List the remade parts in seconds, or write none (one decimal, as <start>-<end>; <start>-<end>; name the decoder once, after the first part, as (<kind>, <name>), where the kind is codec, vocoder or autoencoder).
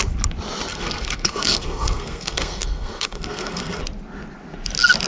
0.7-3.8 (codec, SNAC)